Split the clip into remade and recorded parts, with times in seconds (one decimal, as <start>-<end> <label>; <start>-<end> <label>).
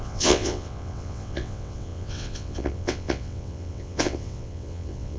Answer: 0.0-5.2 remade